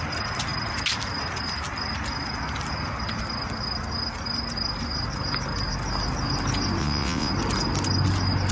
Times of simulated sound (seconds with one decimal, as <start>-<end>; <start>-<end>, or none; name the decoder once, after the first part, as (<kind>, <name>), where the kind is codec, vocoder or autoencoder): 6.8-7.3 (vocoder, WaveNeXt)